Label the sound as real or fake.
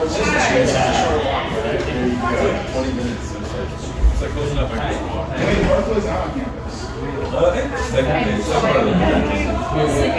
real